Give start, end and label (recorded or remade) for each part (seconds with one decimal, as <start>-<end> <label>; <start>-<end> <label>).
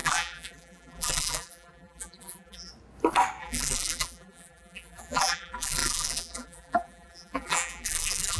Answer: 0.0-2.7 remade; 2.7-3.4 recorded; 3.4-8.4 remade